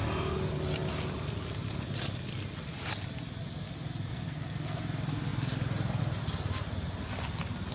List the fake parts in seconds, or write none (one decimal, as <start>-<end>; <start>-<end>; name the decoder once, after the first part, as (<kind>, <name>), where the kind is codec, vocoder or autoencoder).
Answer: 4.1-4.8 (codec, SNAC)